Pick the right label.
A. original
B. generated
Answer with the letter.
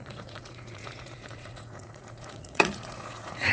B